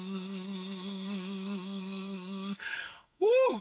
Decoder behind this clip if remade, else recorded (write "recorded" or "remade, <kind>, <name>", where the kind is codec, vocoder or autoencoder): remade, codec, SNAC